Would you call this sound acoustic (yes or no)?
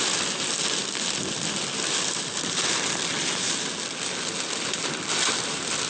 yes